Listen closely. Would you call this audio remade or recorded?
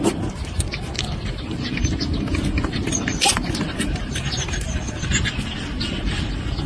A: recorded